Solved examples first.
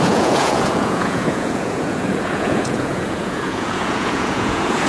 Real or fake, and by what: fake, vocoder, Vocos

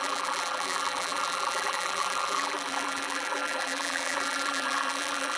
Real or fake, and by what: fake, vocoder, BigVGAN v2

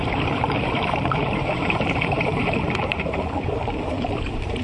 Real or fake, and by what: fake, vocoder, BigVGAN v2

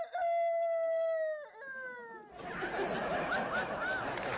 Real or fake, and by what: real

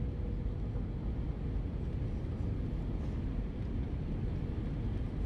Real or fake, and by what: real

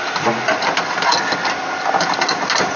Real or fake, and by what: real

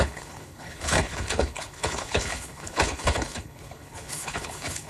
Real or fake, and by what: fake, codec, HILCodec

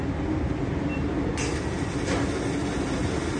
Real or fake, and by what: real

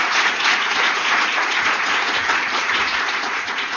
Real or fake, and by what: fake, vocoder, Vocos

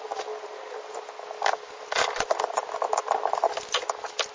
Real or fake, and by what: real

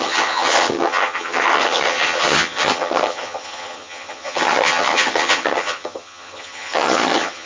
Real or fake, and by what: fake, vocoder, HiFi-GAN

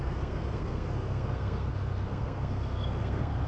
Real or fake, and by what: fake, codec, SNAC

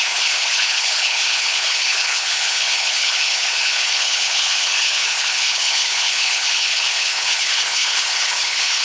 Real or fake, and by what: fake, codec, HILCodec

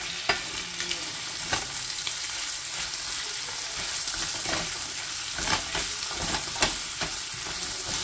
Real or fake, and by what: real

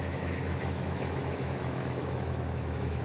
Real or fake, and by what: fake, autoencoder, DAC-VAE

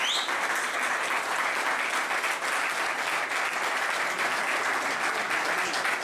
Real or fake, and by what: real